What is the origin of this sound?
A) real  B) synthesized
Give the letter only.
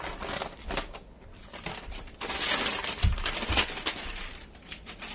A